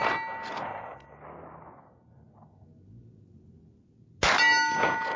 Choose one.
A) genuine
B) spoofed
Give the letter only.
A